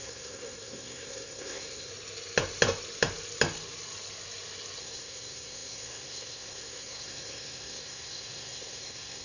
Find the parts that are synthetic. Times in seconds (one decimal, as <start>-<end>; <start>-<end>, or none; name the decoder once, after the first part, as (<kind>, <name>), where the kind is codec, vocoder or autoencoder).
0.0-1.9 (codec, SNAC); 4.8-9.2